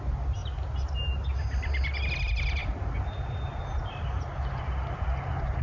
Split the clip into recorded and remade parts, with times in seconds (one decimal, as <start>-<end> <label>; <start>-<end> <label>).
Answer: 0.0-5.6 recorded